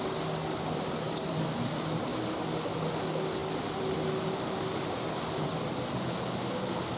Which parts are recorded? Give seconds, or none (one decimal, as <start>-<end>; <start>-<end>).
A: 0.0-7.0